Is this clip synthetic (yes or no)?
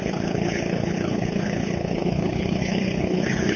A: yes